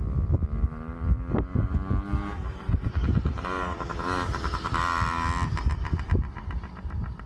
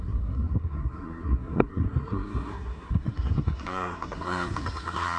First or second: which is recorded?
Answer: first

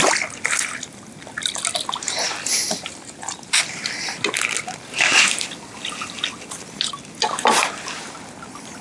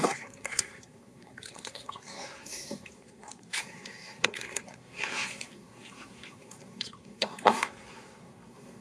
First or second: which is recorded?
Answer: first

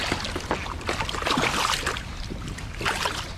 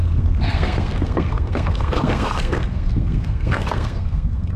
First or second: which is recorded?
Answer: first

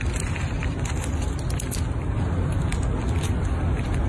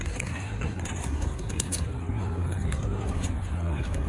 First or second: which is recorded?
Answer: first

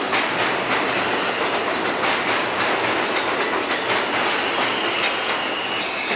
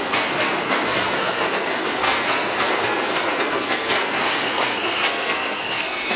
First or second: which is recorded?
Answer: first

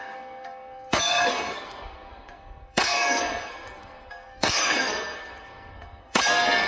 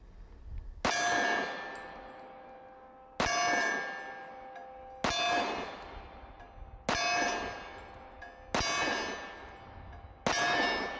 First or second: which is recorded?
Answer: second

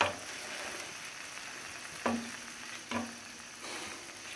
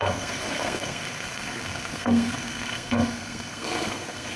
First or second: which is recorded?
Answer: first